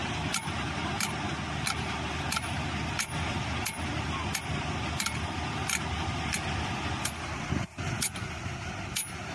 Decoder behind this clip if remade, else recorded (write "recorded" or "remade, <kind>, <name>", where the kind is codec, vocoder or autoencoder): recorded